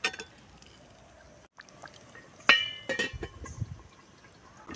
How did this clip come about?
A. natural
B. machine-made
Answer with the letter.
A